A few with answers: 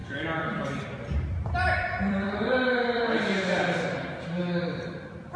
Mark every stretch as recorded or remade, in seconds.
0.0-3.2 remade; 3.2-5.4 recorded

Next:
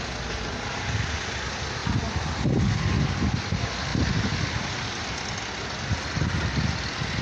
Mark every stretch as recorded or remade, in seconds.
0.0-7.2 recorded